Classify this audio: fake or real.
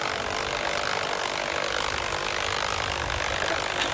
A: real